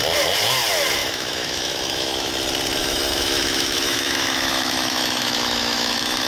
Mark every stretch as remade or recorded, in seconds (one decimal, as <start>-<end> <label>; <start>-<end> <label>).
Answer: 0.0-1.0 recorded; 1.0-2.3 remade; 2.3-2.8 recorded; 2.8-6.3 remade